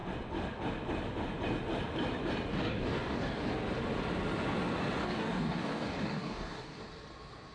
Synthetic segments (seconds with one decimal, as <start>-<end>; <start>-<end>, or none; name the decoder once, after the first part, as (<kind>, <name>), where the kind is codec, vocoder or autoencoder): 2.5-3.4 (codec, DAC); 5.0-6.8